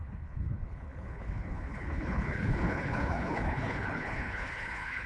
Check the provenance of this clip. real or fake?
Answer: fake